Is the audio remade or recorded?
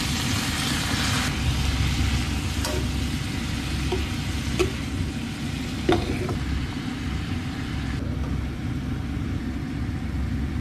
recorded